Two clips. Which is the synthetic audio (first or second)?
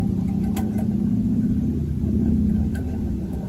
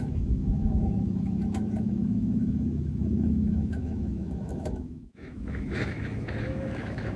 second